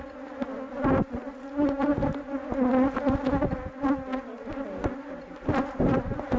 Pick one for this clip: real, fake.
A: real